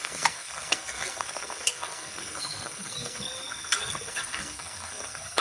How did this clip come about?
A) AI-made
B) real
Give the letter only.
A